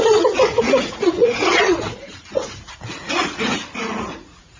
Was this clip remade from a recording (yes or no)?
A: yes